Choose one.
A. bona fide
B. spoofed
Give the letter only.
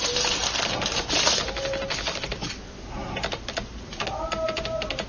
A